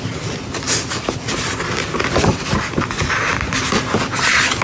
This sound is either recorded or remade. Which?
recorded